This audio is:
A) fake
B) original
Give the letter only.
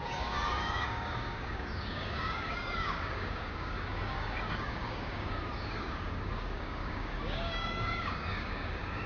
A